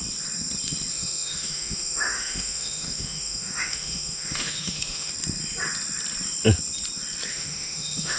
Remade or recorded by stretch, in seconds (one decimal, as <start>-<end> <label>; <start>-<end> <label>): 0.0-0.9 recorded; 0.9-5.1 remade; 5.1-7.3 recorded; 7.3-8.2 remade